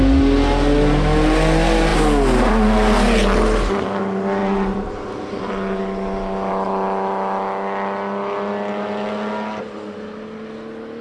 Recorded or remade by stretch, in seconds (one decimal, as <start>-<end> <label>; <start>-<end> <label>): 0.0-11.0 recorded

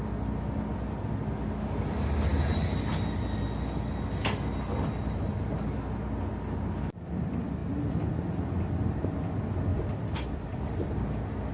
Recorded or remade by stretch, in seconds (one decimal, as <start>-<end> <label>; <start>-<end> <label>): 0.0-9.7 recorded; 9.7-10.6 remade; 10.6-11.5 recorded

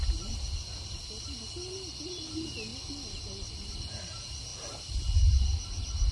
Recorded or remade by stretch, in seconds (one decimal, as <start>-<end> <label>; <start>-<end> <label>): 0.0-4.5 remade; 4.5-5.0 recorded; 5.0-6.1 remade

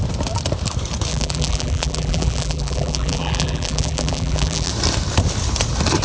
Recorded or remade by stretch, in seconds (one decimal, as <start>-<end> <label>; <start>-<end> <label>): 0.0-1.1 recorded; 1.1-4.7 remade; 4.7-6.0 recorded